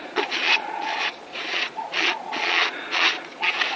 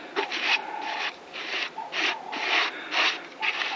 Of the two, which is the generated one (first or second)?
first